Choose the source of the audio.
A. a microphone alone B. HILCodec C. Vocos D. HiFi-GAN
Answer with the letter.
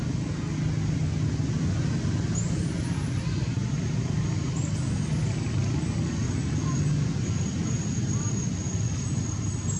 A